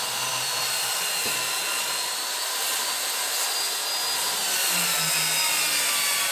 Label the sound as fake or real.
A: real